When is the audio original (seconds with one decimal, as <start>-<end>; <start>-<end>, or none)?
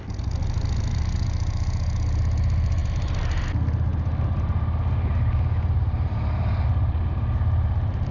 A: 0.0-8.1